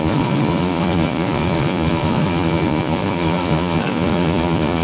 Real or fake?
fake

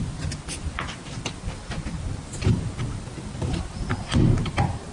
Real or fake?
real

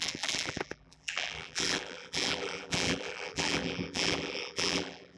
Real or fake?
fake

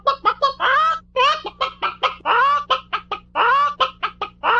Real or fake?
real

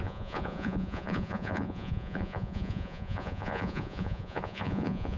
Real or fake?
fake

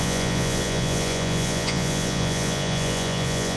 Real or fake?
fake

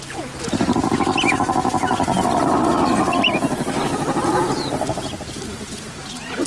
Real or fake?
real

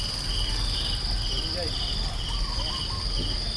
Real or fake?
real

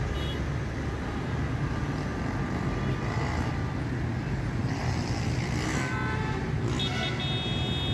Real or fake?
real